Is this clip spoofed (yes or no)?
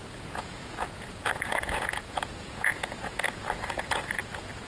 yes